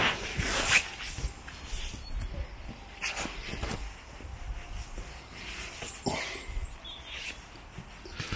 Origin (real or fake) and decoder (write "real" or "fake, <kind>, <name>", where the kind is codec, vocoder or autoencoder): real